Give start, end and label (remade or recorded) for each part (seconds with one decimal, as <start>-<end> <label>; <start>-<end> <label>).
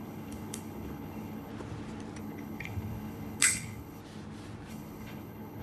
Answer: 0.0-1.5 remade; 1.5-2.2 recorded; 2.2-4.0 remade; 4.0-4.7 recorded; 4.7-5.6 remade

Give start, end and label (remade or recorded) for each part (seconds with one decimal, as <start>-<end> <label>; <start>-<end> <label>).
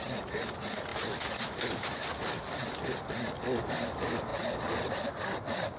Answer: 0.0-5.8 recorded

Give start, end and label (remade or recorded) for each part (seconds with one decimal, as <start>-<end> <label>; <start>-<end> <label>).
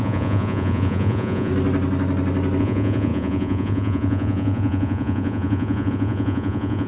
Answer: 0.0-1.5 remade; 1.5-2.6 recorded; 2.6-6.9 remade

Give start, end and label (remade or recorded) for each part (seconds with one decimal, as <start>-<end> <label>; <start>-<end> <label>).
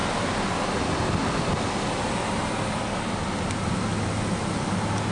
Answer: 0.0-5.1 recorded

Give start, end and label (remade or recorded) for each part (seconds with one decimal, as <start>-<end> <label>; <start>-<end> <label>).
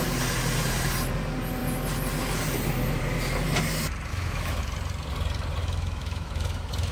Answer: 0.0-4.1 recorded; 4.1-4.6 remade; 4.6-5.6 recorded; 5.6-6.9 remade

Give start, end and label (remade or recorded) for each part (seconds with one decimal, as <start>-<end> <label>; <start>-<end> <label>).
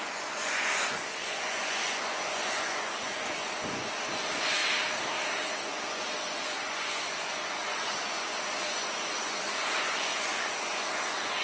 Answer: 0.0-4.6 remade; 4.6-5.6 recorded; 5.6-11.4 remade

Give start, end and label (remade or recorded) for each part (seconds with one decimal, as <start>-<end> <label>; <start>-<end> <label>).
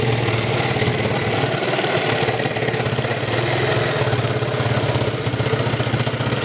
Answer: 0.0-0.9 recorded; 0.9-2.0 remade; 2.0-6.4 recorded